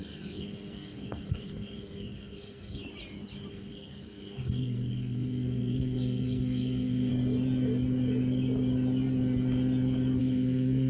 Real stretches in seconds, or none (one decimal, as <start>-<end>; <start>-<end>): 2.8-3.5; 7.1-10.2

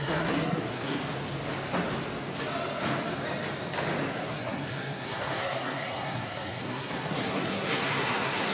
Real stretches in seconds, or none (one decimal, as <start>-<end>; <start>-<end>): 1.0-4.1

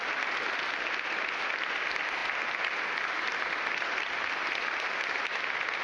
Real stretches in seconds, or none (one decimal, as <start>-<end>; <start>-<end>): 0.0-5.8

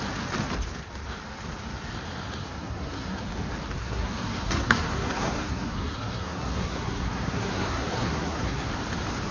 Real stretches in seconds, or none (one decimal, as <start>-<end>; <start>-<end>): 0.0-2.4; 3.3-3.8; 8.7-9.3

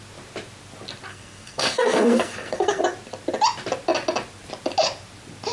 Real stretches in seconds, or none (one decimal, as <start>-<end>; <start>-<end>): 0.0-1.1; 2.8-5.5

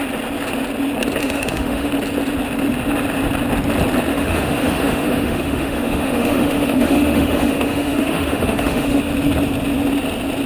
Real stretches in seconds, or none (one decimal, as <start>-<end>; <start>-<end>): 0.0-1.2; 1.9-4.1; 9.0-10.5